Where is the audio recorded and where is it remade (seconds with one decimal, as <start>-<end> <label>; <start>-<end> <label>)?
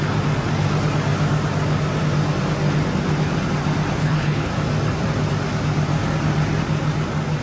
0.0-4.0 recorded; 4.0-4.5 remade; 4.5-7.4 recorded